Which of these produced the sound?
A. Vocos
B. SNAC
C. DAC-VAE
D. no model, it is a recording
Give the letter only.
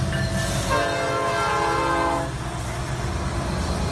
D